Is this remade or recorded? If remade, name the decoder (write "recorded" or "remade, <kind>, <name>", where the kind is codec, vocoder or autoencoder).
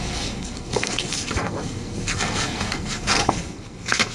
remade, codec, SNAC